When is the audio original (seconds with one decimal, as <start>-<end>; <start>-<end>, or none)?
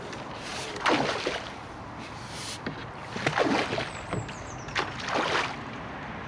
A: 0.0-6.3